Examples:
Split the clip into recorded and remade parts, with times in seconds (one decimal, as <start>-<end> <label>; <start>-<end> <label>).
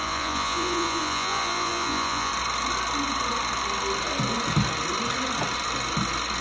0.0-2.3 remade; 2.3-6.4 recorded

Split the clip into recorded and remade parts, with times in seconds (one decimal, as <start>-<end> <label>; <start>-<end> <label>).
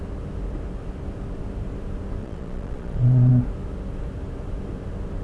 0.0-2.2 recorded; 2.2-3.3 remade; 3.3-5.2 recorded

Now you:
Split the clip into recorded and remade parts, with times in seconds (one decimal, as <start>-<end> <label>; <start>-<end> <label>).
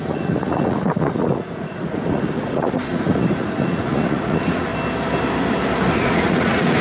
0.0-4.7 remade; 4.7-5.9 recorded; 5.9-6.8 remade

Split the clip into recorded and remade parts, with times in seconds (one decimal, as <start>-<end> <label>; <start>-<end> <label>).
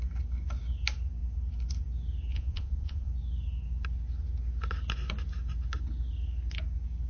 0.0-2.3 recorded; 2.3-3.1 remade; 3.1-7.1 recorded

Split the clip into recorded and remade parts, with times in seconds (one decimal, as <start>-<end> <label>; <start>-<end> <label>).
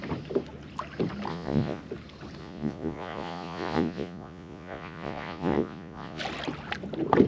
0.0-1.3 recorded; 1.3-1.8 remade; 1.8-2.4 recorded; 2.4-6.2 remade; 6.2-7.3 recorded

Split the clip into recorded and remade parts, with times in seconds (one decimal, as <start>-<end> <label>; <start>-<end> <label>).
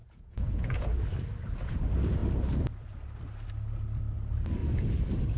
0.0-1.0 remade; 1.0-5.4 recorded